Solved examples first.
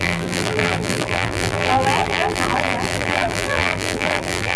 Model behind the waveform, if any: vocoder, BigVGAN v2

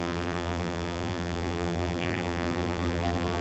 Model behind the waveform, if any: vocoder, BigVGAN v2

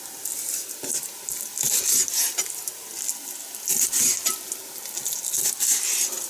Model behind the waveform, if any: none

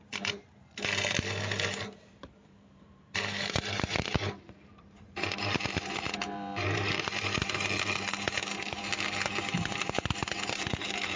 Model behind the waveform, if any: vocoder, BigVGAN v2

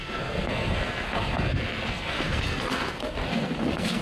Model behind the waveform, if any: codec, SNAC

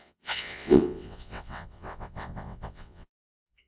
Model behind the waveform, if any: vocoder, WaveNeXt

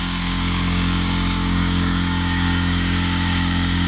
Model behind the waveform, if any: codec, DAC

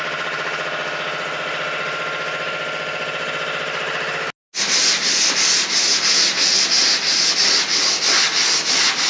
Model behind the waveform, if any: none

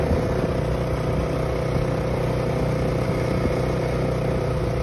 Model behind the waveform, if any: none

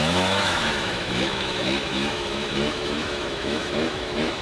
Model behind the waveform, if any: autoencoder, DAC-VAE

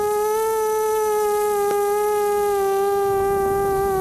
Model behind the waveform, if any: none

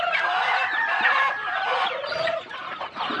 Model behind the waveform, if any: none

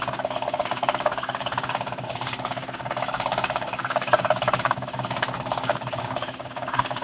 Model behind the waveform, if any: codec, DAC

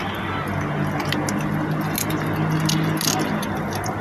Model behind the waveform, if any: none